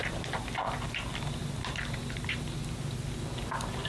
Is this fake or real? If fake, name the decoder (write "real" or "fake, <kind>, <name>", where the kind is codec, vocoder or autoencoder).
real